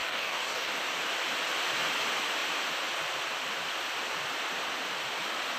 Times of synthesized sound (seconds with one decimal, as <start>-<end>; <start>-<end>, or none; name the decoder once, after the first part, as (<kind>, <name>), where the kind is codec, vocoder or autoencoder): 0.0-0.7 (codec, DAC)